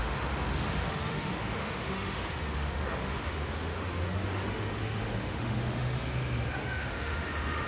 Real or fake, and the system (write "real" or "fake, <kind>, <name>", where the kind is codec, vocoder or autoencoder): fake, autoencoder, DAC-VAE